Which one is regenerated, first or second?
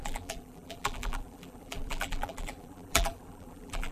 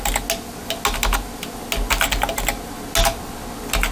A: first